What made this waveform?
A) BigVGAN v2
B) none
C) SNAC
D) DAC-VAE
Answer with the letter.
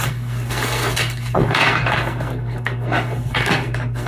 C